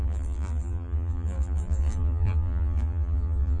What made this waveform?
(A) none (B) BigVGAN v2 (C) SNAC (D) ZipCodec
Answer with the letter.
B